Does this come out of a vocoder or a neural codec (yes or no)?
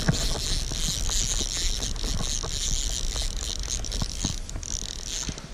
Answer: no